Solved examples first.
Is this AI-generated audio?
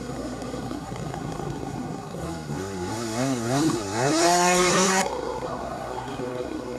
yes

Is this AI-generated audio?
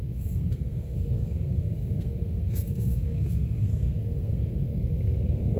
yes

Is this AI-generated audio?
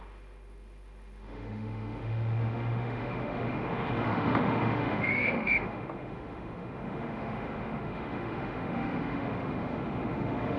yes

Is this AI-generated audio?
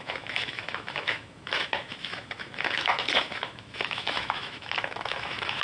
yes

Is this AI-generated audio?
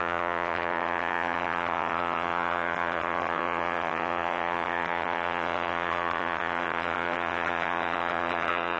yes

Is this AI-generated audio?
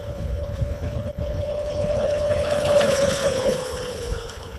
yes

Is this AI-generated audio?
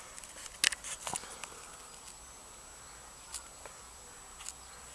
no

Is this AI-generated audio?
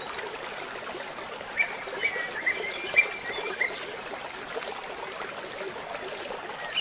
no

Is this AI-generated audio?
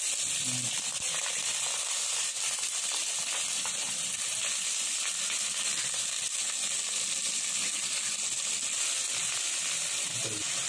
no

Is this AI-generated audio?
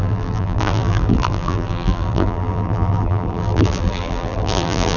yes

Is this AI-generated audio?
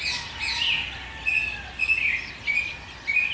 no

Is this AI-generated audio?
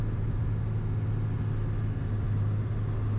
no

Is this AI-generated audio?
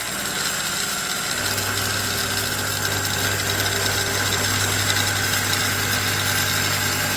no